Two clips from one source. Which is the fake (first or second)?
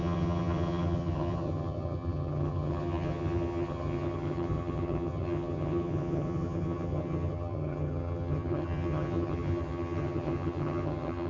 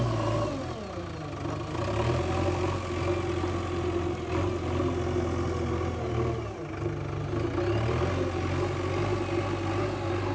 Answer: first